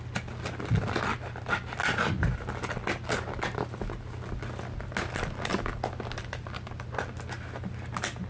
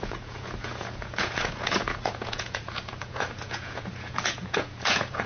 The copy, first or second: second